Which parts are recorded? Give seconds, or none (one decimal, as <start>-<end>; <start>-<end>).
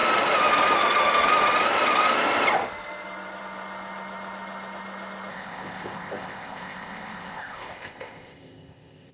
0.0-5.3